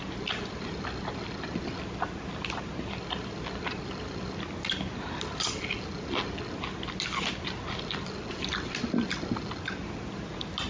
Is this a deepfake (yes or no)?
no